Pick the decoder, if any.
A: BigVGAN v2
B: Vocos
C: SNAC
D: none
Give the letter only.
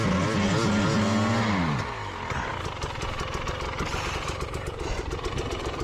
D